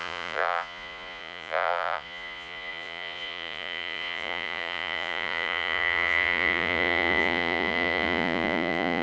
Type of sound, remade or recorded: remade